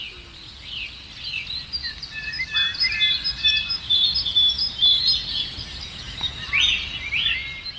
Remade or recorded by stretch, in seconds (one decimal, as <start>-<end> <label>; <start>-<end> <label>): 0.0-2.7 recorded; 2.7-5.1 remade; 5.1-7.8 recorded